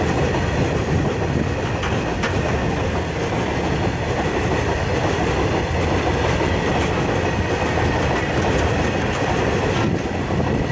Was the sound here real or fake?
real